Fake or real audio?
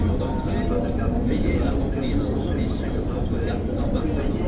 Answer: real